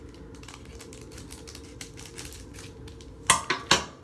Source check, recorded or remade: recorded